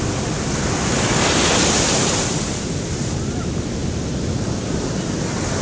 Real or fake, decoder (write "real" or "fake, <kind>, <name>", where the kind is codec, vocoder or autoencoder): real